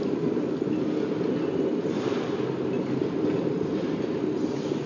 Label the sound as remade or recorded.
recorded